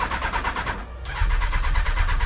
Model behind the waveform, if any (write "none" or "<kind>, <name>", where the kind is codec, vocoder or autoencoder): vocoder, BigVGAN v2